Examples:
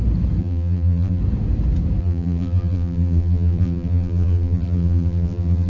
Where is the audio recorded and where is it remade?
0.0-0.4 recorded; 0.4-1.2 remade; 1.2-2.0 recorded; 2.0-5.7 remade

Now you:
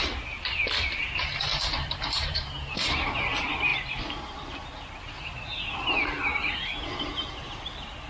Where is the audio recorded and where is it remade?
0.0-1.5 recorded; 1.5-3.1 remade; 3.1-8.1 recorded

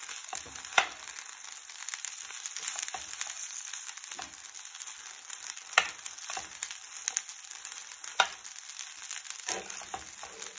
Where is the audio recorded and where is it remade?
0.0-10.6 recorded